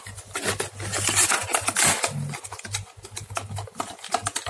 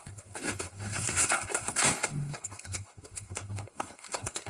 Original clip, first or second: first